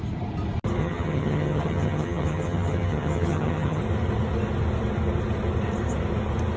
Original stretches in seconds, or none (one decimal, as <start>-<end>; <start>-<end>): 0.0-0.8; 3.8-6.6